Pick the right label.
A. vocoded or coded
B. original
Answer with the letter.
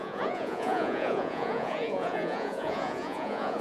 A